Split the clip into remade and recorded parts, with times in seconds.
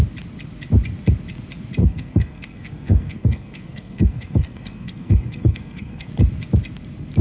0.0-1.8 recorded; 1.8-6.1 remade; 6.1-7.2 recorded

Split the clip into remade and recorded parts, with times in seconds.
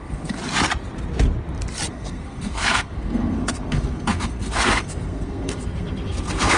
0.0-0.4 remade; 0.4-1.9 recorded; 1.9-6.6 remade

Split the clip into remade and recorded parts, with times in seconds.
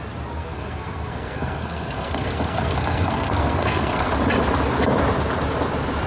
0.0-0.4 recorded; 0.4-4.1 remade; 4.1-6.1 recorded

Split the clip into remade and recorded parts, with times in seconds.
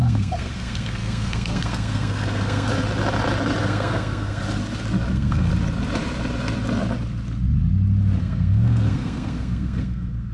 0.0-2.7 remade; 2.7-3.6 recorded; 3.6-4.4 remade; 4.4-5.1 recorded; 5.1-5.5 remade; 5.5-8.2 recorded; 8.2-10.3 remade